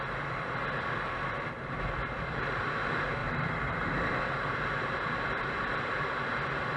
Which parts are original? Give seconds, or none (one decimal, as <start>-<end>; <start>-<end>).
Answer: 0.0-3.2; 4.2-6.8